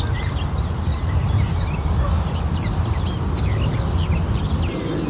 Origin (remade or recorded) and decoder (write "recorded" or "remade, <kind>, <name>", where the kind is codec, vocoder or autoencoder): recorded